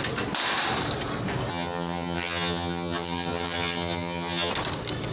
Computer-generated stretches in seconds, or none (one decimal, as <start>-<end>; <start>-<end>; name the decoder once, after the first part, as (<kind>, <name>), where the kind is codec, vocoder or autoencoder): 1.5-4.5 (vocoder, HiFi-GAN)